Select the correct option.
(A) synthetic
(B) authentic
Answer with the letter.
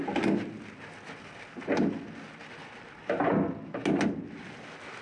B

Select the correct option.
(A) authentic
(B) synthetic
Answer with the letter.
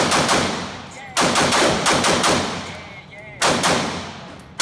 A